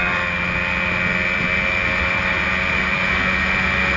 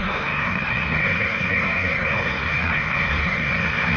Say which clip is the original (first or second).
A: first